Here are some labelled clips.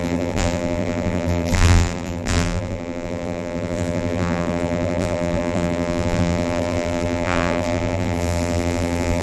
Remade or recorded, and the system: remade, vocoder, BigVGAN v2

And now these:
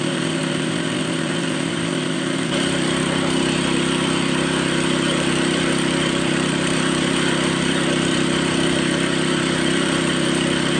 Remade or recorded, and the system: remade, vocoder, BigVGAN v2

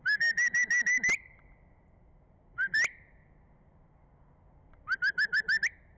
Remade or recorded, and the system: recorded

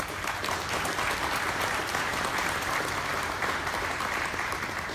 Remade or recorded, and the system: remade, vocoder, BigVGAN v2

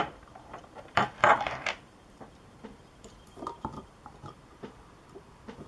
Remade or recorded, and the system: remade, vocoder, BigVGAN v2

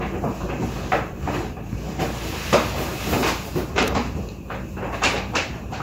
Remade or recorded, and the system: remade, vocoder, BigVGAN v2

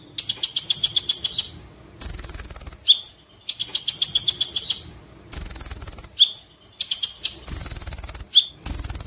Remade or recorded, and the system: recorded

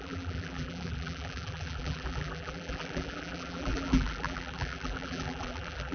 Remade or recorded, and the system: remade, vocoder, BigVGAN v2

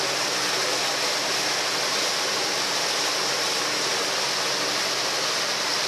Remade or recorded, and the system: recorded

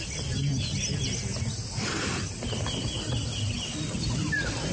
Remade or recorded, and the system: recorded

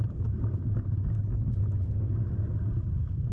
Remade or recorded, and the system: remade, vocoder, BigVGAN v2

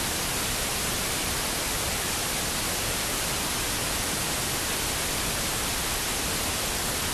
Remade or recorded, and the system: recorded